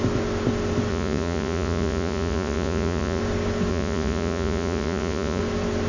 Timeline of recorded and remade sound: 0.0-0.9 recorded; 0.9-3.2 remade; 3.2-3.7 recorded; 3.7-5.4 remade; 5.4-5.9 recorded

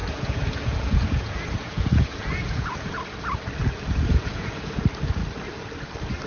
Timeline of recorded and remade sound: 0.0-2.9 remade; 2.9-4.1 recorded; 4.1-4.8 remade; 4.8-6.3 recorded

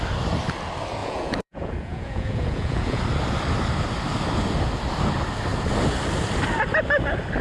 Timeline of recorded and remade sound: 0.0-1.0 recorded; 1.0-3.0 remade; 3.0-7.4 recorded

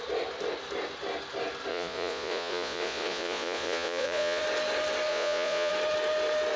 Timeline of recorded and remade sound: 0.0-1.7 recorded; 1.7-4.4 remade; 4.4-5.1 recorded; 5.1-5.7 remade; 5.7-6.6 recorded

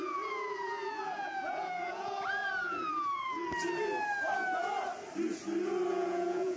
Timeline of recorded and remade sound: 0.0-3.4 remade; 3.4-5.9 recorded; 5.9-6.6 remade